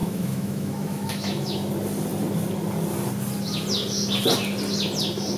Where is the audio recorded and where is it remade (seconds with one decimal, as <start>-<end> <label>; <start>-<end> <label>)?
0.0-1.7 remade; 1.7-5.4 recorded